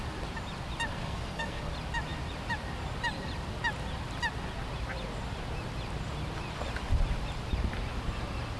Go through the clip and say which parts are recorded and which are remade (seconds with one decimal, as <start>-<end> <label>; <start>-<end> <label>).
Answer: 0.0-0.9 recorded; 0.9-1.6 remade; 1.6-8.6 recorded